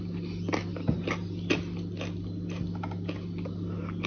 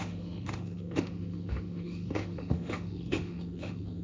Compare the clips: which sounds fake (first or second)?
second